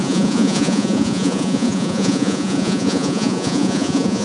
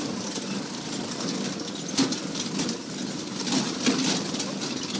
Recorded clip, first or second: second